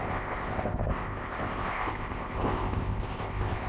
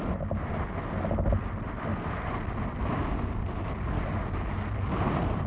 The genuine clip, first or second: second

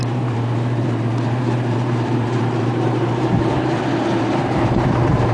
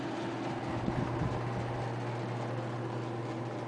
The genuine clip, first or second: second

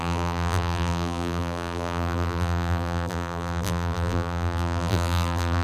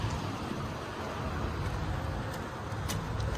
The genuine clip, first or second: second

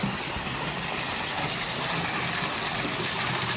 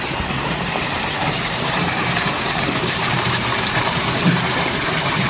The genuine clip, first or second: first